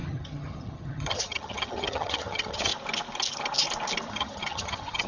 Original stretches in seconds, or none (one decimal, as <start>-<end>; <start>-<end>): 2.7-4.1